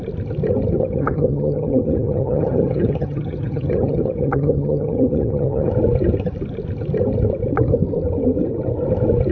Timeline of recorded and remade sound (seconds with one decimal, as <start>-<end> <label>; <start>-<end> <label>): 0.0-0.7 recorded; 0.7-5.7 remade; 5.7-9.3 recorded